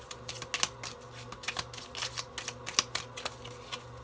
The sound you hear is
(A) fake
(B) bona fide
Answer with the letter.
B